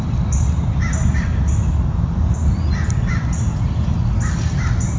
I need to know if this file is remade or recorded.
recorded